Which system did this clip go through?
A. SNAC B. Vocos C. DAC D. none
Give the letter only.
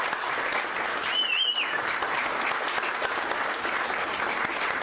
D